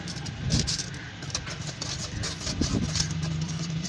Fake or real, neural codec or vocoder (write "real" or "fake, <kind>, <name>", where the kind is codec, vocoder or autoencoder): fake, vocoder, BigVGAN v2